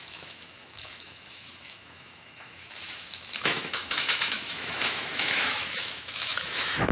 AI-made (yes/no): yes